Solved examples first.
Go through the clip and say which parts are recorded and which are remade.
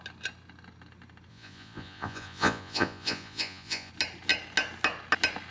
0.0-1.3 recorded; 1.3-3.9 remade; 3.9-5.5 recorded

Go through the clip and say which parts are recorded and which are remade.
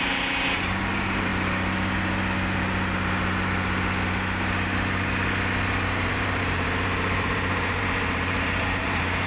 0.0-1.3 remade; 1.3-6.1 recorded; 6.1-9.3 remade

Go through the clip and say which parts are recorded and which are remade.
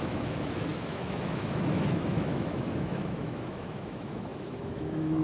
0.0-5.2 remade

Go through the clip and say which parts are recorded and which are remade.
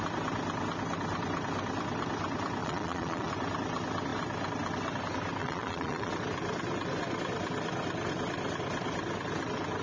0.0-2.6 recorded; 2.6-3.3 remade; 3.3-5.4 recorded; 5.4-6.1 remade; 6.1-9.8 recorded